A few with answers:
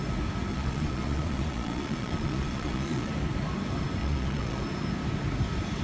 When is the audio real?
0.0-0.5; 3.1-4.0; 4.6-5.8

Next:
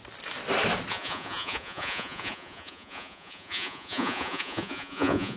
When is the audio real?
0.0-0.9

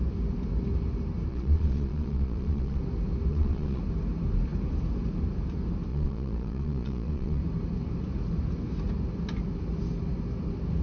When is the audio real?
0.0-1.3; 2.8-3.3; 3.8-5.9; 7.4-10.8

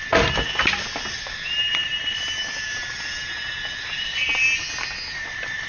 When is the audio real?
0.0-5.7

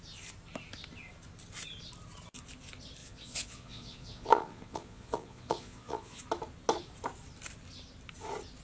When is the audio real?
0.0-3.0; 6.2-8.6

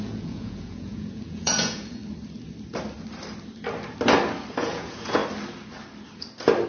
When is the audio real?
2.0-4.6; 5.2-6.7